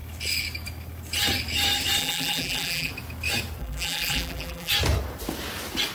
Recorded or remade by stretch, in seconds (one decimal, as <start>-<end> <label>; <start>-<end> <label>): 0.0-2.0 recorded; 2.0-2.9 remade; 2.9-3.6 recorded; 3.6-4.7 remade; 4.7-5.9 recorded